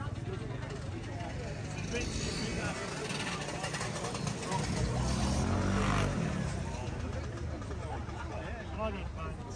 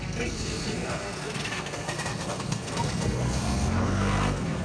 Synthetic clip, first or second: second